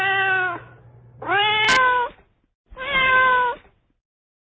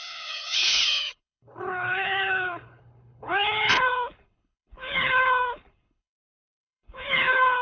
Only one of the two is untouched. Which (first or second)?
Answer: first